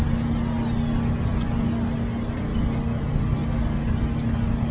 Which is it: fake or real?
real